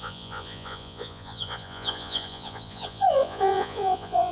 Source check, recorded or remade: remade